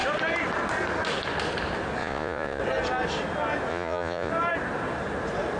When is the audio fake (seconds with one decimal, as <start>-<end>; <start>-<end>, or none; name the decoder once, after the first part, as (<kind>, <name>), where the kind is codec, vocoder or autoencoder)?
2.0-2.6 (vocoder, Vocos); 3.7-4.3